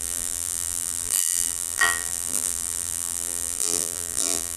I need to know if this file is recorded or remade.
remade